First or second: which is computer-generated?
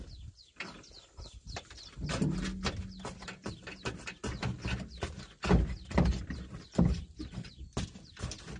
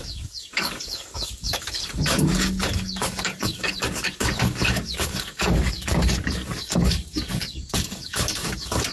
second